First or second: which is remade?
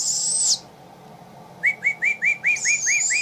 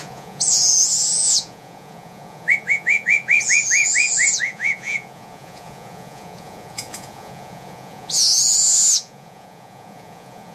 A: second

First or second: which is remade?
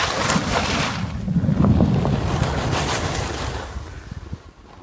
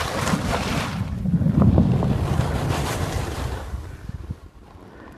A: second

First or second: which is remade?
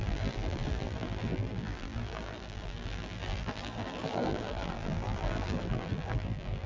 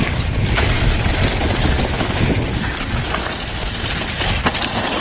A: first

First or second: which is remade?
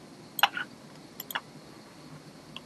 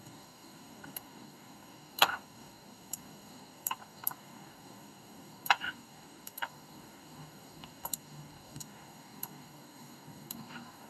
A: second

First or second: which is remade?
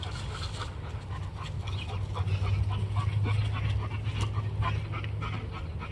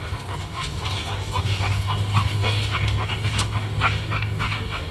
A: second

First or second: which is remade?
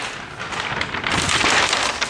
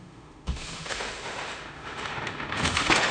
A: second